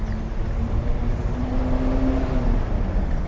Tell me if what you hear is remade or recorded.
recorded